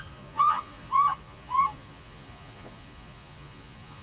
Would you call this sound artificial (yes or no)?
yes